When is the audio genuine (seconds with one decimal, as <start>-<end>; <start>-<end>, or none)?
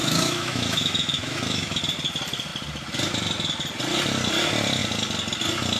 1.8-5.8